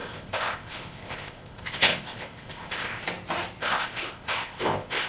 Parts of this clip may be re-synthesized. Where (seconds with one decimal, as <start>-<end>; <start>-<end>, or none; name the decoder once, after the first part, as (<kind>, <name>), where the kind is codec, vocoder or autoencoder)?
0.0-3.0 (codec, ZipCodec); 3.6-5.1